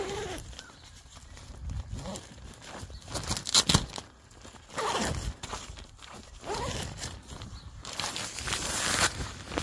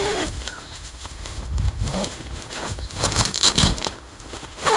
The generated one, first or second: second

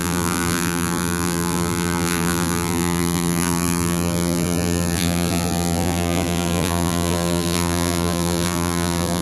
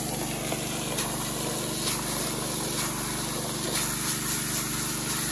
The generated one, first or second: first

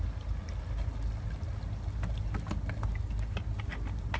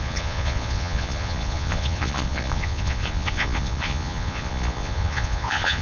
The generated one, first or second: second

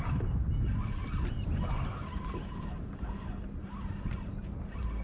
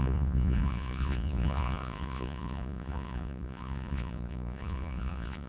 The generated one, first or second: second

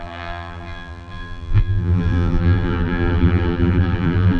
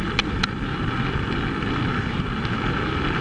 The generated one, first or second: first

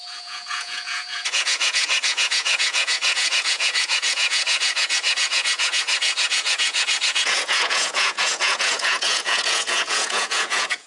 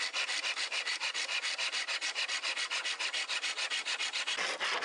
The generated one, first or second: first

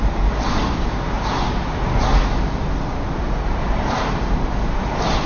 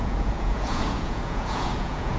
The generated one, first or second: second